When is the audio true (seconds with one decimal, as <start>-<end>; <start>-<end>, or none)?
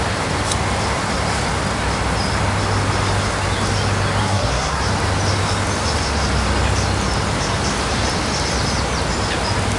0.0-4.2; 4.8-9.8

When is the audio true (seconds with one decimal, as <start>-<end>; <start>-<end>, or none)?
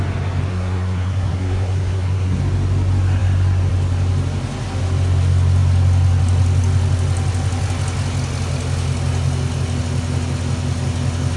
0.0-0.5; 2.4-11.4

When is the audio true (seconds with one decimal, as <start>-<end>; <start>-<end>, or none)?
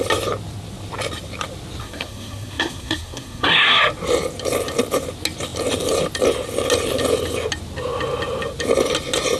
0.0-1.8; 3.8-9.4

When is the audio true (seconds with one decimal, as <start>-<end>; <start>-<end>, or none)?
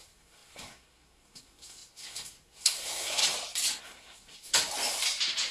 3.2-3.8; 4.5-5.5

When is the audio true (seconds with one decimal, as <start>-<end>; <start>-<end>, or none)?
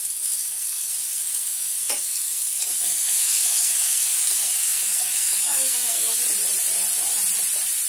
6.2-7.9